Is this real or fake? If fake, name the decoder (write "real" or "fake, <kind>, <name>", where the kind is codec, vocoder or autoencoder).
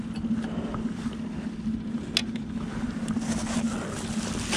real